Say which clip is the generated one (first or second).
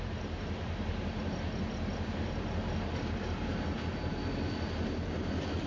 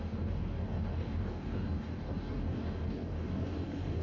second